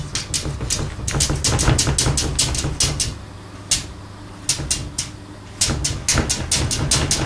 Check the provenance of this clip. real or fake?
real